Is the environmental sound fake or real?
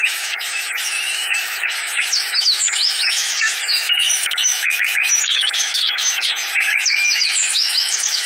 fake